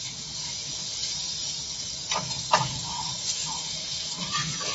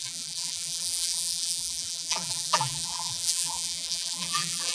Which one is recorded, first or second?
first